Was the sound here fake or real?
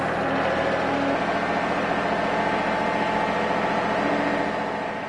real